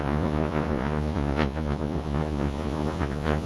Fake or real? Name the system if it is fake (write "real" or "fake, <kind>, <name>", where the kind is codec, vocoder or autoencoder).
fake, vocoder, Vocos